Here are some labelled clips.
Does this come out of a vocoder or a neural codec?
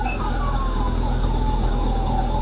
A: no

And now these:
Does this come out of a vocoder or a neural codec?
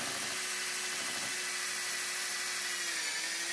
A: no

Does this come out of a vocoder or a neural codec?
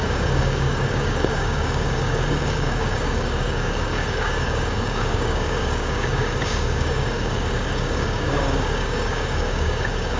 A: yes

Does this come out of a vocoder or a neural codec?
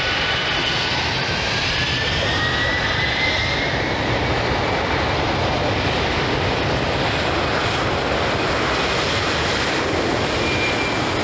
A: no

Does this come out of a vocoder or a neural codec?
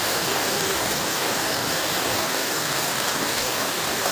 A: yes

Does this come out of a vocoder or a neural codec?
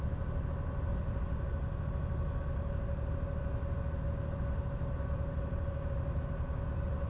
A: no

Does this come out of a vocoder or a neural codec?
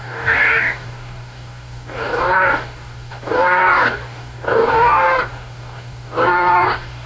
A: yes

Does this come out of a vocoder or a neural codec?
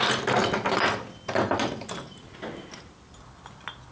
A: no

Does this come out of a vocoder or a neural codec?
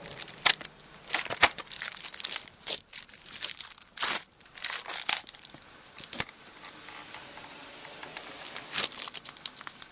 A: no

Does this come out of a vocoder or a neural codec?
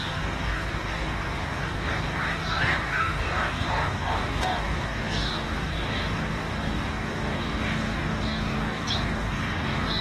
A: yes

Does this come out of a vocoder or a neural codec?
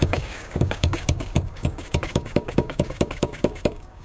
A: yes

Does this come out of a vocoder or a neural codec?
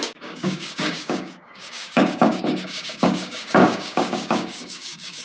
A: yes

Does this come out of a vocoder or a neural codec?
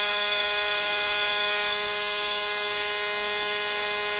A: yes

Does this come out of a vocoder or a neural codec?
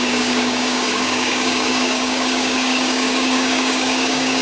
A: yes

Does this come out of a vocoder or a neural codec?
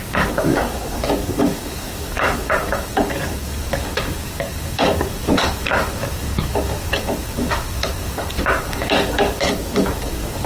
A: yes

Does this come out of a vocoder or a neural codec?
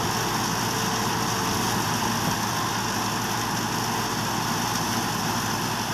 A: no